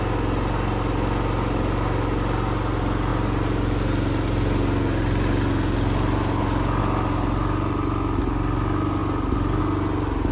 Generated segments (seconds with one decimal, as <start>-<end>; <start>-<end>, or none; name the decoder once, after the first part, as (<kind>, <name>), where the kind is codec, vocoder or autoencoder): none